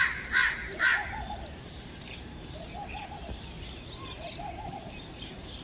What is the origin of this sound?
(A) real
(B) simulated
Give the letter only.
B